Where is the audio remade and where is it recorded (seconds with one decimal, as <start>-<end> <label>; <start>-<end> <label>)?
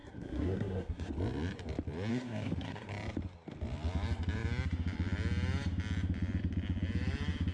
0.0-1.1 remade; 1.1-2.1 recorded; 2.1-2.9 remade; 2.9-7.5 recorded